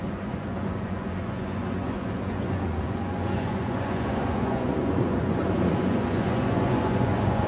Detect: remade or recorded remade